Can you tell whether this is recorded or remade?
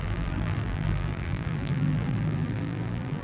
remade